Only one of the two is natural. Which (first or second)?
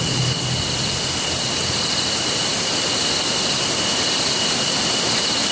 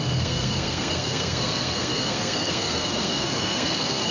first